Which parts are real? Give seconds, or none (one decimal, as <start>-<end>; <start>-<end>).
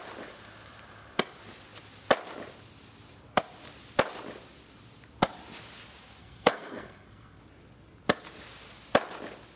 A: 0.0-6.2; 7.4-9.6